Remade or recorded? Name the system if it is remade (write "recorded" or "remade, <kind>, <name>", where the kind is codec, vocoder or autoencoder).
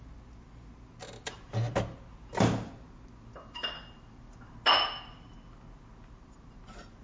recorded